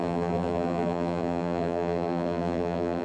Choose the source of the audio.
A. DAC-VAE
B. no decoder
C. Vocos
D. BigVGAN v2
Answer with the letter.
D